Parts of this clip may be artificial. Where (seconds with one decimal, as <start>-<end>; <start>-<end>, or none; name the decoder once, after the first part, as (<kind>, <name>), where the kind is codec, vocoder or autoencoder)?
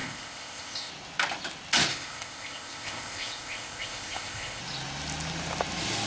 0.0-0.9 (codec, ZipCodec); 1.9-4.6